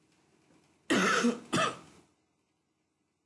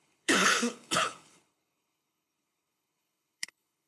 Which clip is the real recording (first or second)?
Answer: first